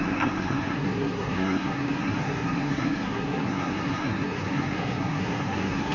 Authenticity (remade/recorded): remade